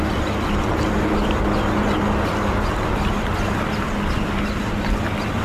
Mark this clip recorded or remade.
recorded